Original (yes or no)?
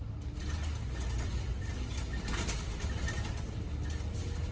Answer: yes